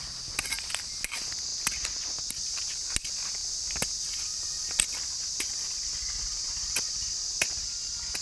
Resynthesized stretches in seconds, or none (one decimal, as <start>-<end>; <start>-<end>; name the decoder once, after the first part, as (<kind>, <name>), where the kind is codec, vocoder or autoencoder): none